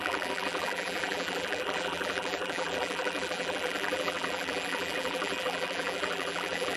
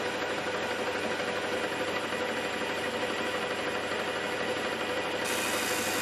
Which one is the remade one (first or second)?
first